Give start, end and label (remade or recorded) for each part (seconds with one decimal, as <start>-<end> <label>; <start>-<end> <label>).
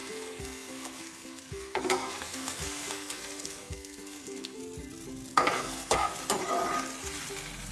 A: 0.0-4.6 remade; 4.6-5.3 recorded; 5.3-6.1 remade; 6.1-7.7 recorded